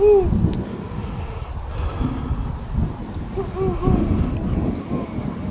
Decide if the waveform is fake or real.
real